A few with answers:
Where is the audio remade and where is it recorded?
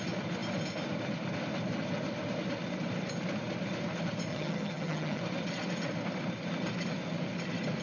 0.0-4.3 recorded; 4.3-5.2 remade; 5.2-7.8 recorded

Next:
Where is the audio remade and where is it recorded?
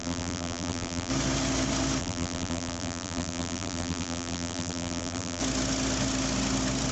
0.0-1.1 remade; 1.1-2.0 recorded; 2.0-5.4 remade; 5.4-6.9 recorded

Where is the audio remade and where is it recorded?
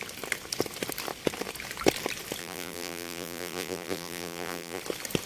0.0-2.4 recorded; 2.4-4.8 remade; 4.8-5.3 recorded